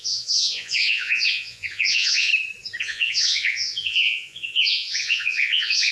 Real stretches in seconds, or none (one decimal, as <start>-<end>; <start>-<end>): 2.3-2.8